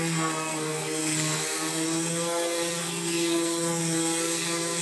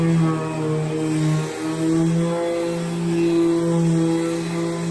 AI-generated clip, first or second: first